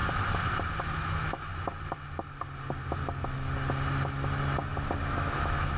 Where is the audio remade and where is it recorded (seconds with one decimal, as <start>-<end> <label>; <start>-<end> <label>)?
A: 0.0-0.8 recorded; 0.8-1.5 remade; 1.5-5.0 recorded; 5.0-5.8 remade